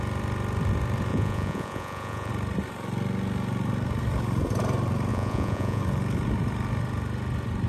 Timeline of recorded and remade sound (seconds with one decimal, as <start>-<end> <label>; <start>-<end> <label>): 0.0-1.1 recorded; 1.1-2.3 remade; 2.3-5.1 recorded; 5.1-5.8 remade; 5.8-7.7 recorded